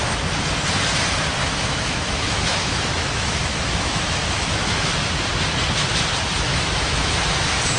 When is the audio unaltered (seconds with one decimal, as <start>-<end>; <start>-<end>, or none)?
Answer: 0.0-1.4; 4.9-6.5; 7.1-7.8